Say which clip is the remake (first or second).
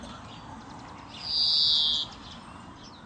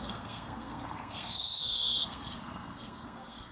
second